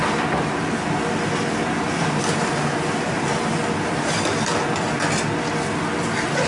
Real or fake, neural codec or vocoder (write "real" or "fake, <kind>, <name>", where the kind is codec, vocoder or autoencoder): real